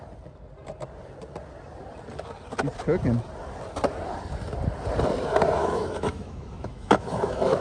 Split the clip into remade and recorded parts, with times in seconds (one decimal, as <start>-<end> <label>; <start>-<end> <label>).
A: 0.0-5.6 recorded; 5.6-7.6 remade